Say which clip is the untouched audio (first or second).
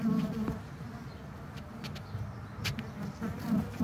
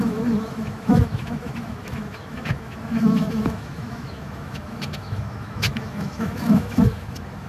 first